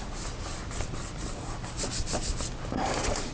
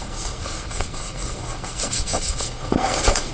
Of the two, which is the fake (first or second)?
second